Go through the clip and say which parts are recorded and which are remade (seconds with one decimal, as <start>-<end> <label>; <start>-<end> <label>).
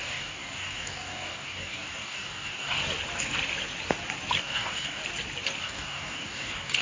0.0-2.8 remade; 2.8-4.4 recorded; 4.4-5.0 remade; 5.0-5.6 recorded; 5.6-6.8 remade